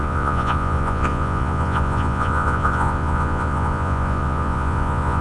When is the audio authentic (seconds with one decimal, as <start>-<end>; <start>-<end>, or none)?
none